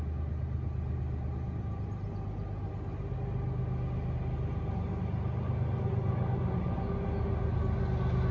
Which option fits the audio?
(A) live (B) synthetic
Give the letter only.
A